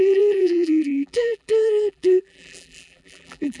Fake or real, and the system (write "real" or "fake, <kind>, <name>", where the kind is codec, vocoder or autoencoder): fake, vocoder, BigVGAN v2